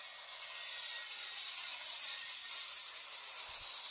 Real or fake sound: real